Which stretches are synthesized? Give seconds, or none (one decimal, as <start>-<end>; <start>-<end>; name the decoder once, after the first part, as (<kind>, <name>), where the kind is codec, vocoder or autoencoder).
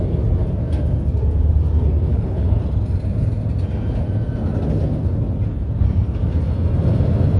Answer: 2.1-2.6 (codec, HILCodec)